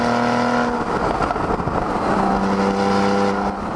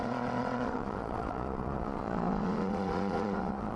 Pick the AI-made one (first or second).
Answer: second